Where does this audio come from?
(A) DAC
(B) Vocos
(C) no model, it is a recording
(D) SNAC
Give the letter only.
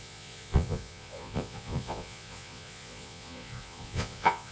B